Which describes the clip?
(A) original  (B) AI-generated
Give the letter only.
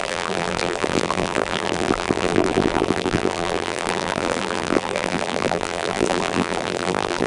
B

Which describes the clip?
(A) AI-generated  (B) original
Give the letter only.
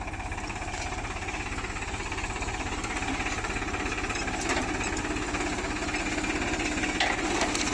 B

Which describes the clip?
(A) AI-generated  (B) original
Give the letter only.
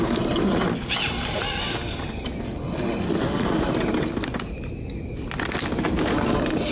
B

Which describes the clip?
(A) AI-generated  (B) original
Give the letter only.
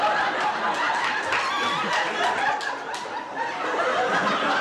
B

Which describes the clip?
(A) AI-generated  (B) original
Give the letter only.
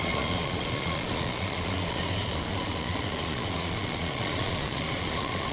A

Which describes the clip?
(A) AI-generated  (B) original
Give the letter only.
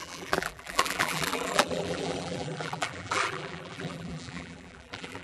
A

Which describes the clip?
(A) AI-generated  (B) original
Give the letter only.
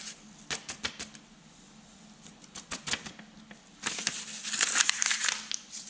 B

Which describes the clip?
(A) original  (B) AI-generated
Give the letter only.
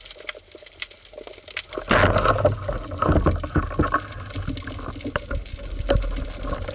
A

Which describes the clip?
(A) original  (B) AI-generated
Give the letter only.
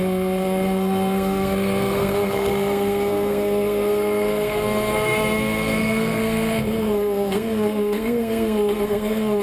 B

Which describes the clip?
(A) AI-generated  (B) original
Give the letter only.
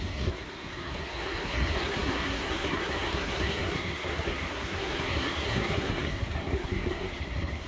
A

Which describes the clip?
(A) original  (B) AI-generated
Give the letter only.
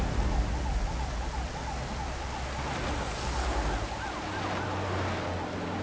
A